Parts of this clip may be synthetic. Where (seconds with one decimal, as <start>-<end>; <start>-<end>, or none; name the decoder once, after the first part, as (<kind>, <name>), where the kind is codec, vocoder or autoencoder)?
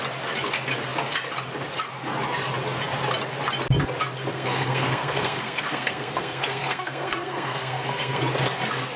4.3-8.2 (codec, SNAC)